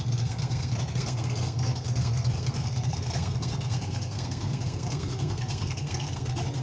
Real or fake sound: fake